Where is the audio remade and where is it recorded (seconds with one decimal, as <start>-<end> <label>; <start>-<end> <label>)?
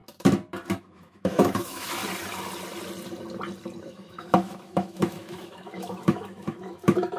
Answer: 0.0-0.8 recorded; 0.8-2.0 remade; 2.0-3.8 recorded; 3.8-7.2 remade